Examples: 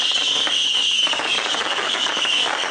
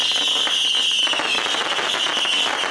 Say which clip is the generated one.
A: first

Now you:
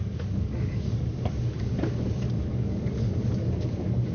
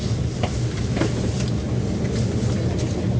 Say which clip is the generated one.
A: first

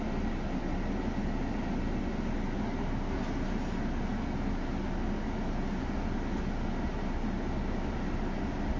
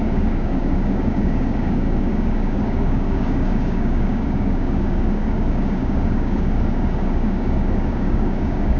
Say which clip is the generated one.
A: second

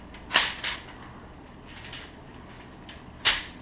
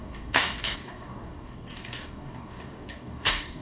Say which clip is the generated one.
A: second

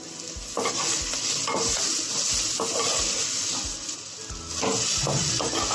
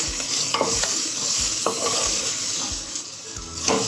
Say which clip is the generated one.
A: second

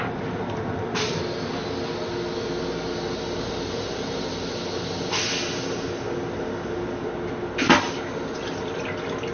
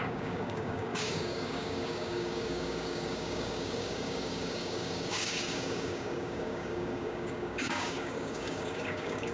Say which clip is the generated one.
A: second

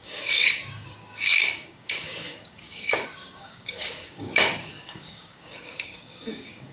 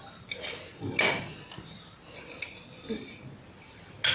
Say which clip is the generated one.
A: first